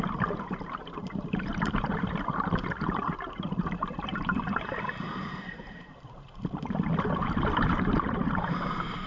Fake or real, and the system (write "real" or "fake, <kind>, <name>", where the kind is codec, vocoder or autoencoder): fake, vocoder, BigVGAN v2